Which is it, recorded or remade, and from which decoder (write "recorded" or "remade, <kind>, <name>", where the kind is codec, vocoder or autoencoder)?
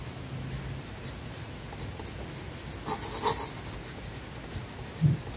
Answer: recorded